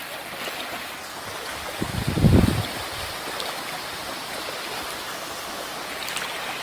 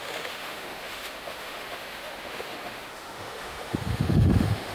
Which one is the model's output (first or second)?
second